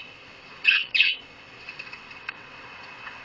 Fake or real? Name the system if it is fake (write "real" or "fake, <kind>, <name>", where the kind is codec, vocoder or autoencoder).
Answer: fake, vocoder, WaveNeXt